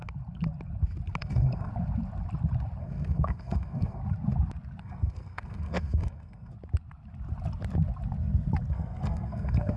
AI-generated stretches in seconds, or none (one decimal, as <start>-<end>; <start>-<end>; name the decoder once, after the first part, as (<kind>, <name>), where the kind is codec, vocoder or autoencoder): 1.2-1.7 (codec, SNAC); 2.8-4.0; 4.8-6.5; 8.7-9.8